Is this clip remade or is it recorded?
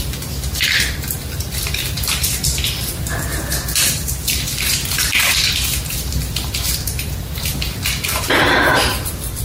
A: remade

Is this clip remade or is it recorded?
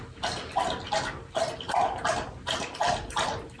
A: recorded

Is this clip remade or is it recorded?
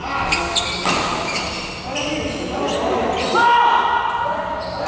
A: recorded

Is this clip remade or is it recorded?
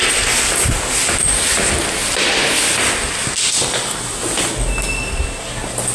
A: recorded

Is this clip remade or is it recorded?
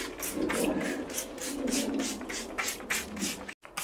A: recorded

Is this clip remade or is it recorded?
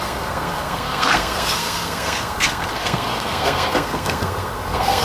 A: remade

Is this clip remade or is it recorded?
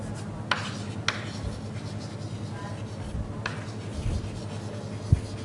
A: recorded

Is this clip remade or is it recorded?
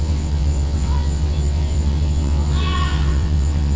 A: remade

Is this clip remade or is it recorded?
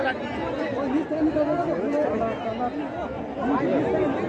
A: recorded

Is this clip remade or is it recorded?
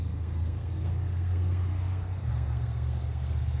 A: remade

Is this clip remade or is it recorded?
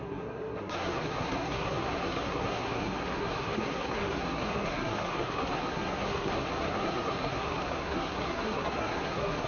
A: remade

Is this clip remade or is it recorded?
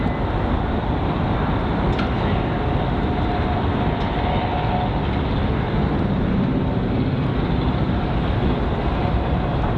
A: recorded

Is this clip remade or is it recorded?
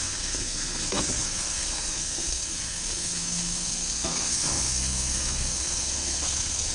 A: remade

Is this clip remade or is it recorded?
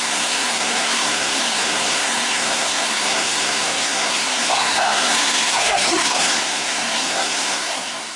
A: remade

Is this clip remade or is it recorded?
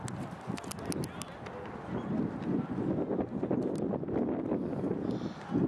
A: recorded